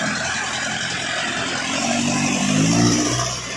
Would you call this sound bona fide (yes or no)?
no